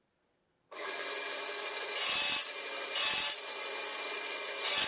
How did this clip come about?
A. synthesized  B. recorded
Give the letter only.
B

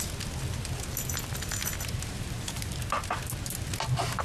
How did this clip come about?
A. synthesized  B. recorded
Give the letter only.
B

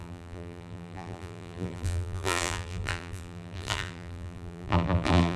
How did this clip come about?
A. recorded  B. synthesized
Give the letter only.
B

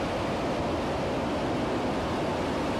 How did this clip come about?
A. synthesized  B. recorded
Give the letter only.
B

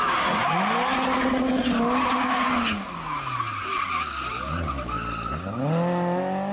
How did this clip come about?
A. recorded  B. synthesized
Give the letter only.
A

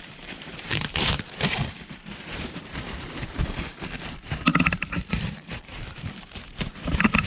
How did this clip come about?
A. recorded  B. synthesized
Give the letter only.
B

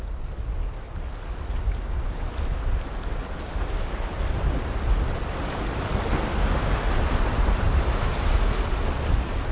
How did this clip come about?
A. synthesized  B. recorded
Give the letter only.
B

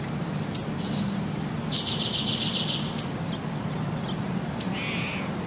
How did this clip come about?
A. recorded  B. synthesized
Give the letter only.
A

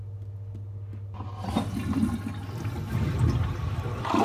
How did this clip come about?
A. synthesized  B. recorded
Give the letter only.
B